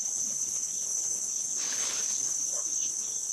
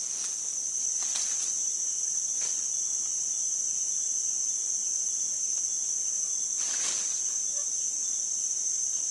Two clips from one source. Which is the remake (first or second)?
first